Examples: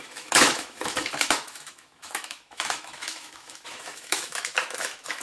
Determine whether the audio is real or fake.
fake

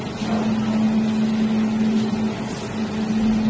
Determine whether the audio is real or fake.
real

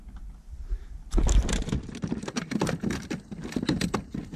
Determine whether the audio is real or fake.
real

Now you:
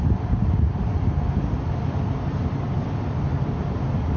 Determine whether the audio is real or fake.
real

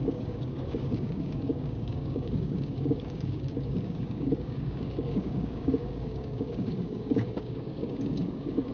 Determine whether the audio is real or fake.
fake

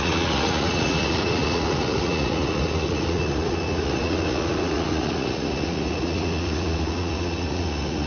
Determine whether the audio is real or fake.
fake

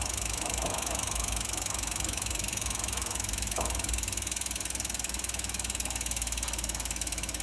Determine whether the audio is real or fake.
fake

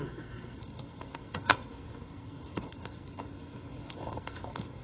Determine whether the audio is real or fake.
fake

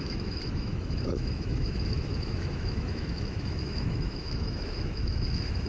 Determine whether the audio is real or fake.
fake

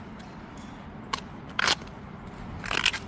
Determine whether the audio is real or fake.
real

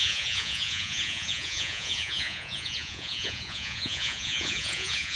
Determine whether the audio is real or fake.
fake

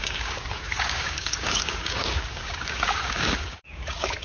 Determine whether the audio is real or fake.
fake